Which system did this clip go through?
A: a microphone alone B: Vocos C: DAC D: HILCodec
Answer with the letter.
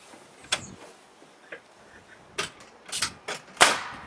A